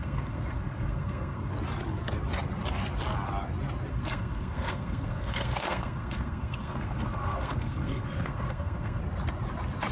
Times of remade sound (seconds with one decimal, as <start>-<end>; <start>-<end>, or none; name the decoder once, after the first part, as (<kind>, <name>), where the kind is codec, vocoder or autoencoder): 0.0-1.5 (codec, SNAC); 3.9-9.0